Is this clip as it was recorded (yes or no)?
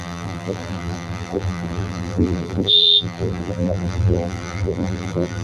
no